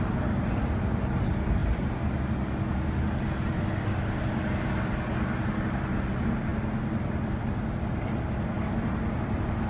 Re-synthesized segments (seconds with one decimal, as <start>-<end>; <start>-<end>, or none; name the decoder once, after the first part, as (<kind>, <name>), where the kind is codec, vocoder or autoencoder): none

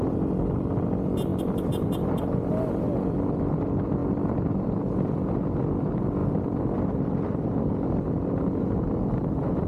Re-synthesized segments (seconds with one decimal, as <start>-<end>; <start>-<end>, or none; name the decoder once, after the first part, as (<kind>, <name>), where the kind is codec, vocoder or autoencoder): 4.0-4.5 (vocoder, BigVGAN v2); 6.2-7.5

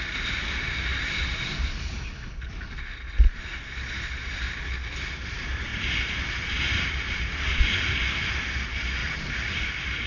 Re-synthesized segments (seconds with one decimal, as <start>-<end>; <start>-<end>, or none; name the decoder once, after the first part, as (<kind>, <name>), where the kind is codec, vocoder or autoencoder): 0.9-2.1 (vocoder, BigVGAN v2); 5.7-7.9; 9.0-9.7

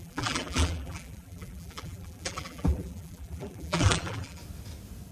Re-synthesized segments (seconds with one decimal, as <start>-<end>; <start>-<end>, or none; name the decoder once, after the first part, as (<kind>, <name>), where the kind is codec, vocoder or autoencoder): 0.0-4.4 (vocoder, BigVGAN v2)

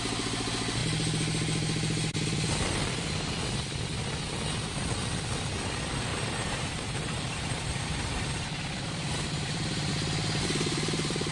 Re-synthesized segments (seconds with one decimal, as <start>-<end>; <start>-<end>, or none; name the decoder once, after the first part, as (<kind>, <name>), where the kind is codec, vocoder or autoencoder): 6.1-9.9 (vocoder, BigVGAN v2)

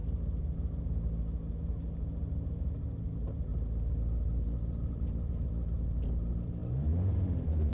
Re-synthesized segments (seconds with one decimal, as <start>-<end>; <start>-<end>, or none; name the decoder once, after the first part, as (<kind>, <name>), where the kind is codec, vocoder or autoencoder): none

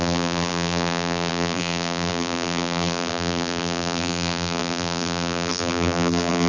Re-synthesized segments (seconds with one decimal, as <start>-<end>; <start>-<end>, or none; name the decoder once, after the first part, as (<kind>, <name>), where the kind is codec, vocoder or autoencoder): 0.0-6.5 (vocoder, BigVGAN v2)